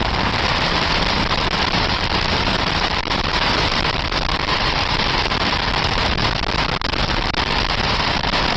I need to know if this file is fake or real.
fake